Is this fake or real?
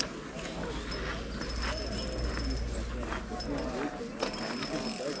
real